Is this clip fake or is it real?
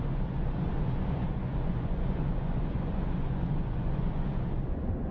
fake